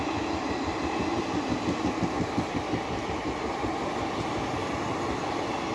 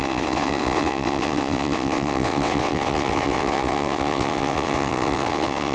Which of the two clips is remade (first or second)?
second